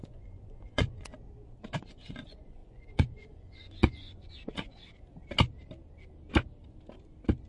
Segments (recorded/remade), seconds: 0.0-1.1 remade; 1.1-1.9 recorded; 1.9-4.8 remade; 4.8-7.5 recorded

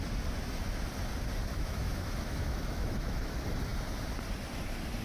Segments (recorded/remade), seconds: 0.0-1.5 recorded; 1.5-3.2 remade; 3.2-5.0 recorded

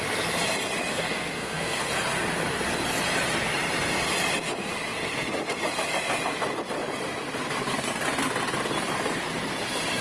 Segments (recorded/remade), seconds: 0.0-0.9 recorded; 0.9-1.9 remade; 1.9-10.0 recorded

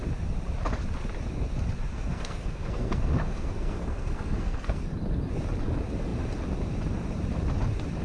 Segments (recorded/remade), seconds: 0.0-1.9 recorded; 1.9-4.8 remade; 4.8-8.0 recorded

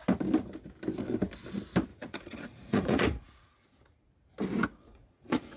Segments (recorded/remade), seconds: 0.0-1.9 recorded; 1.9-4.1 remade; 4.1-4.7 recorded; 4.7-5.6 remade

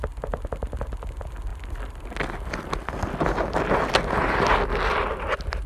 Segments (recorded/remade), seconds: 0.0-5.7 recorded